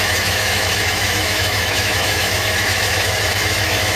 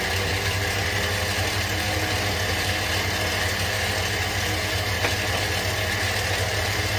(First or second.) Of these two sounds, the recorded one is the second